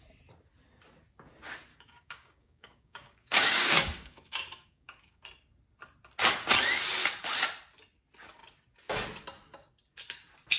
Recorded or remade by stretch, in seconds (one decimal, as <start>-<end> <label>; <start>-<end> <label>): 0.0-1.7 recorded; 1.7-5.2 remade; 5.2-10.6 recorded